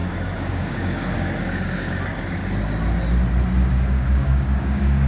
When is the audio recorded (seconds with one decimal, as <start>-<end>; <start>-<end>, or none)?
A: 2.4-3.7